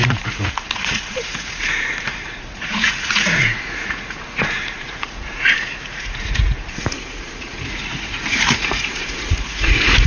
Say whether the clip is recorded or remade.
remade